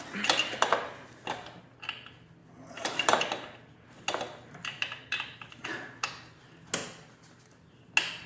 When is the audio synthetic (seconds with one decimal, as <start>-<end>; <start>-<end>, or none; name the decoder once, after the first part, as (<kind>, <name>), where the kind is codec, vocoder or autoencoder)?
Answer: none